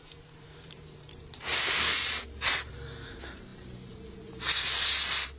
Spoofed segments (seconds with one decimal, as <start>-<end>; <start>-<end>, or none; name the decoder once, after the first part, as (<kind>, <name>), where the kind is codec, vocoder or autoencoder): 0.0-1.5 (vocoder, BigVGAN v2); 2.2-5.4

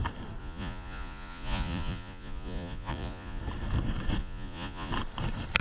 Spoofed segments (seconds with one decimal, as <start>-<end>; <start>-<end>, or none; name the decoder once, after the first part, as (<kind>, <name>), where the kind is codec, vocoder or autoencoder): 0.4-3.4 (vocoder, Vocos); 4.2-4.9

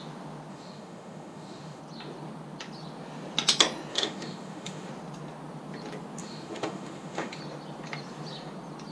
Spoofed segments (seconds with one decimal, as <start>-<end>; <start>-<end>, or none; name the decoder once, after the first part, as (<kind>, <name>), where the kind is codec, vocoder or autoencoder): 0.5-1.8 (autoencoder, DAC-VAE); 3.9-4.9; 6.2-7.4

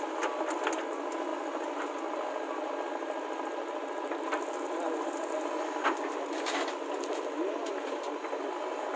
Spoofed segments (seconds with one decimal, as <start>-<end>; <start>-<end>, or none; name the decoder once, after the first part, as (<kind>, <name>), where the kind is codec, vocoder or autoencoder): none

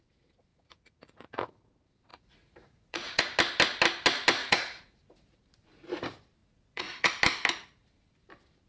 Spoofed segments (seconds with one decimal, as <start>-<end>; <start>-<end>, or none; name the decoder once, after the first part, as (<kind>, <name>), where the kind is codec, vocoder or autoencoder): 0.5-1.7 (vocoder, Vocos); 2.1-3.2; 4.4-5.4; 6.4-7.1

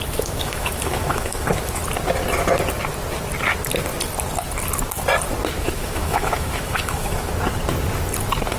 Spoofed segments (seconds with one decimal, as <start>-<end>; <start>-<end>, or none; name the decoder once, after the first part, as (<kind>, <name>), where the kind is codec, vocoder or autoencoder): 0.0-1.8 (autoencoder, DAC-VAE); 5.6-7.3